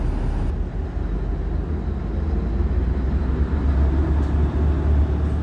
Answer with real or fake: real